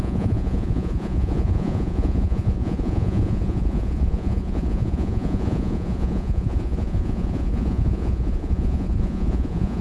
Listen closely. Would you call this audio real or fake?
fake